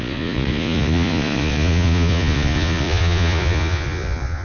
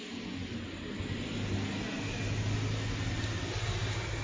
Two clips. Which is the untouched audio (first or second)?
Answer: second